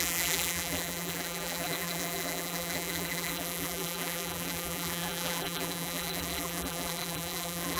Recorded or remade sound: remade